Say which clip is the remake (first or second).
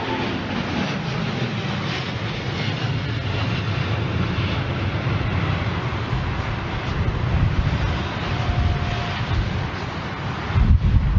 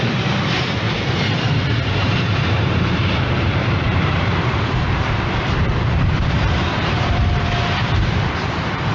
second